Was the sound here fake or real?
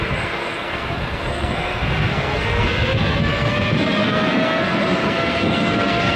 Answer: fake